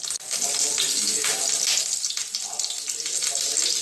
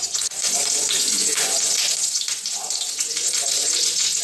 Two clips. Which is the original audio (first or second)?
first